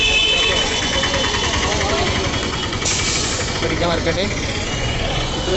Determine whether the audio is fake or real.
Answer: fake